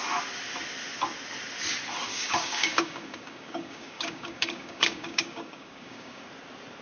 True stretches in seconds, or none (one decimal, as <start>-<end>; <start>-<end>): 0.0-2.1; 6.2-6.8